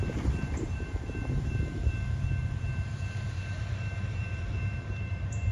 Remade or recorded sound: remade